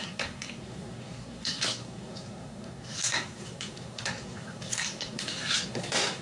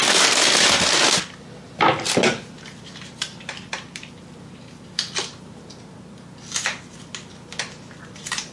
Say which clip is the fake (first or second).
first